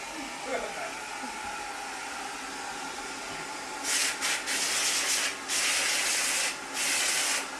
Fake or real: real